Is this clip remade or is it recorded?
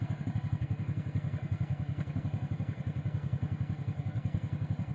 remade